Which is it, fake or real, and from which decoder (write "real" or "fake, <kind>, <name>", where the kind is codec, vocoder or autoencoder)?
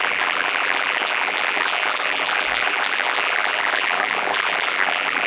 fake, vocoder, BigVGAN v2